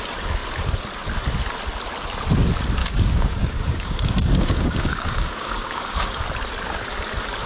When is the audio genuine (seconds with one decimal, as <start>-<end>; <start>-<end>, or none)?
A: 0.0-2.8; 6.2-7.5

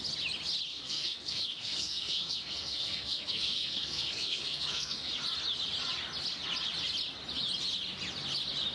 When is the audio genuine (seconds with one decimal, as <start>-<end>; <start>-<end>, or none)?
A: 0.0-0.7; 5.1-8.7

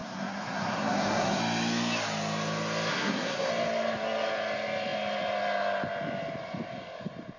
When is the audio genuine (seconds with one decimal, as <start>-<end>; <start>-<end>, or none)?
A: 1.4-2.9; 3.5-7.4

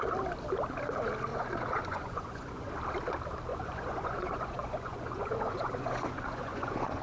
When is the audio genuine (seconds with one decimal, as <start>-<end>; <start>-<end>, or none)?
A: 0.0-1.3; 2.7-3.5

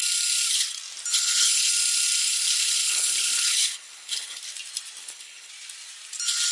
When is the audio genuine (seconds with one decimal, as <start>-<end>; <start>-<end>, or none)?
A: 0.0-1.1; 1.7-2.2; 4.4-5.0; 5.5-6.5

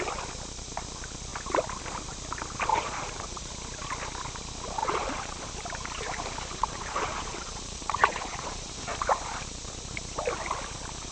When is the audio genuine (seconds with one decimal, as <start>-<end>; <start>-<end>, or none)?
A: 0.0-2.7; 3.5-4.8; 5.5-6.6; 8.7-11.1

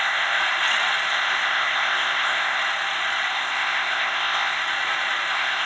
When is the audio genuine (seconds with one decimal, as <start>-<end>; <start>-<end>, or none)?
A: 0.4-1.1; 2.6-3.3; 4.6-5.3

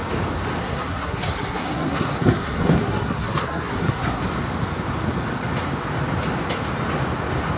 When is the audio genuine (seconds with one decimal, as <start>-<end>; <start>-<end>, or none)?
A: 0.0-0.6; 4.2-7.6